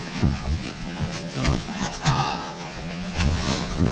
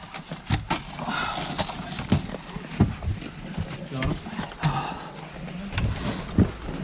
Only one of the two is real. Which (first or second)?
second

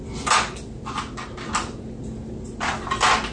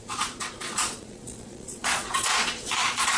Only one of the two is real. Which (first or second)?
first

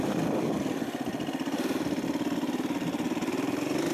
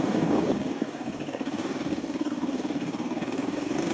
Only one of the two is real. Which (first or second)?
first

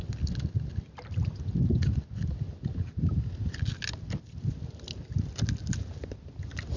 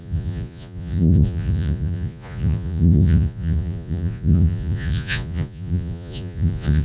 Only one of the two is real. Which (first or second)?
first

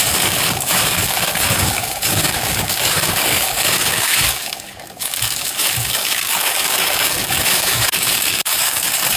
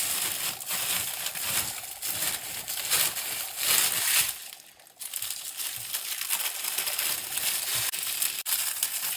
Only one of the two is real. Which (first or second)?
second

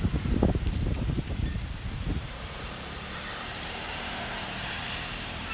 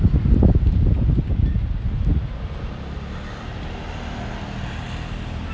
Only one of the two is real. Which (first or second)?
second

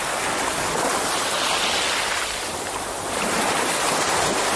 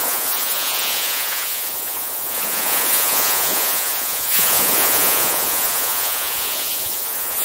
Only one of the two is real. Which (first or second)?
first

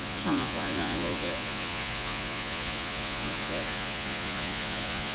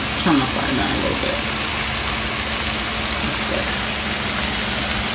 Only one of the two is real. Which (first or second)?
second